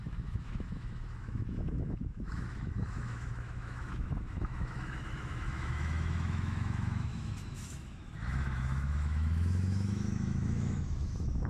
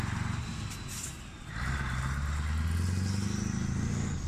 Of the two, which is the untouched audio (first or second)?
second